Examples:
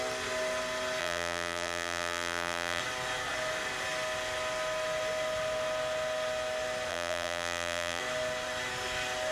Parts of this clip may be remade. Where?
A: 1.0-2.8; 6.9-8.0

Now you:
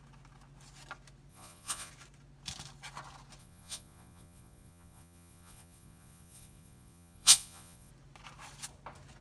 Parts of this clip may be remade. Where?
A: 1.3-1.9; 3.4-7.9

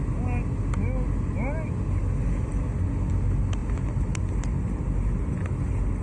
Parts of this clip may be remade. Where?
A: none